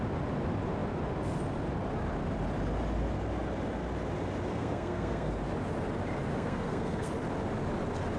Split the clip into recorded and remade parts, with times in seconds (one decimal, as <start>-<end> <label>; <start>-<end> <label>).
0.0-4.5 recorded; 4.5-5.3 remade; 5.3-6.3 recorded; 6.3-7.1 remade; 7.1-8.2 recorded